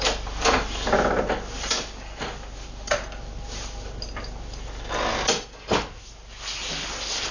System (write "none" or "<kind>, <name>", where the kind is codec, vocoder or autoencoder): none